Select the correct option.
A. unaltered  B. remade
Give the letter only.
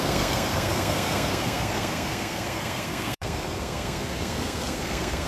B